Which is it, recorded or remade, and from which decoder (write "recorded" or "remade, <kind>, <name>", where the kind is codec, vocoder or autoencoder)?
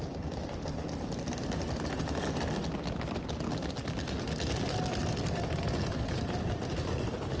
recorded